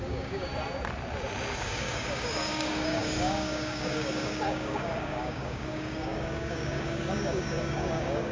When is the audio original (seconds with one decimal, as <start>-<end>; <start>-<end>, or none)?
0.5-1.6